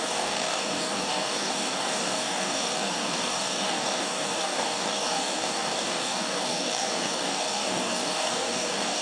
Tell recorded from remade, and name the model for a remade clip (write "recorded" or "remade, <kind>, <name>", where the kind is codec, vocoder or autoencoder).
remade, codec, DAC